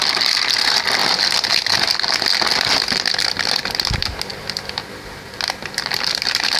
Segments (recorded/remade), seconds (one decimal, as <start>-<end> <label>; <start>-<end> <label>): 0.0-6.6 recorded